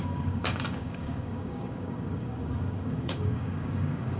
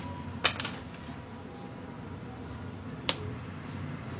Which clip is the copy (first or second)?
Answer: first